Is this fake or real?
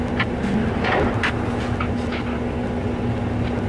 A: real